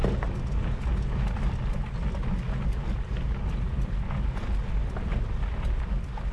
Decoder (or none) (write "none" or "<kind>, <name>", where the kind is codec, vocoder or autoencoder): none